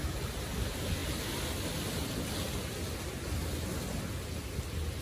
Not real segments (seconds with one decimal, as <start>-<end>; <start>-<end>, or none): none